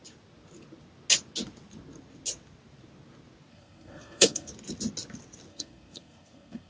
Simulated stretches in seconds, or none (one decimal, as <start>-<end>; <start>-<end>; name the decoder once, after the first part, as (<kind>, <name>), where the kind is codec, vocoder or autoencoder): 3.5-4.5 (codec, SNAC); 5.5-6.7